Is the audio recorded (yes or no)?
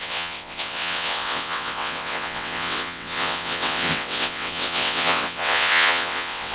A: no